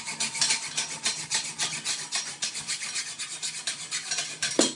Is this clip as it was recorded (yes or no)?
yes